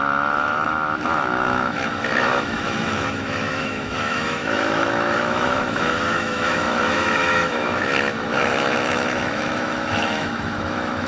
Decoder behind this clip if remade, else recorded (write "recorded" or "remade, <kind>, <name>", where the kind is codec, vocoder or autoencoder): remade, autoencoder, DAC-VAE